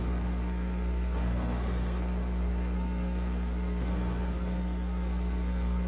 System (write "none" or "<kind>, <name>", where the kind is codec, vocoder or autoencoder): codec, SNAC